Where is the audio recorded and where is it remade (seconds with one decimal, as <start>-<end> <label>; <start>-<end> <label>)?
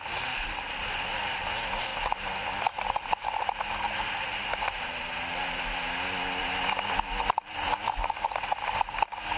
0.0-9.4 recorded